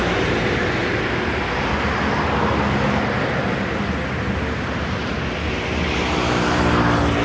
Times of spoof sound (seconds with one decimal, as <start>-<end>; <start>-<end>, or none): none